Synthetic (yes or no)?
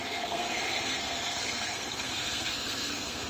yes